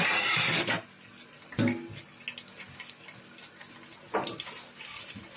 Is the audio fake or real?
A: real